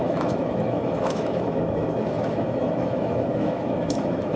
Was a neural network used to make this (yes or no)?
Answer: yes